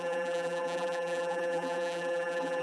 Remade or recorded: remade